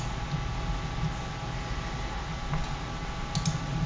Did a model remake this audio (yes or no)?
no